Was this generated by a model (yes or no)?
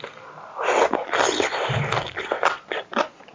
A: no